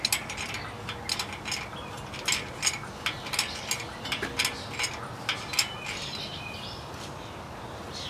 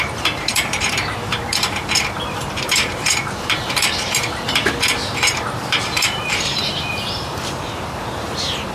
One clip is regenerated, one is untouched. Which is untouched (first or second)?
first